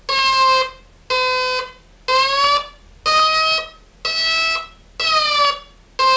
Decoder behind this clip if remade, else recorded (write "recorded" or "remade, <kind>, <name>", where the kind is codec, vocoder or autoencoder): recorded